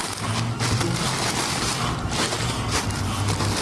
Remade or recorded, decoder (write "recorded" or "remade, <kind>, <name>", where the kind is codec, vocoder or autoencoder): recorded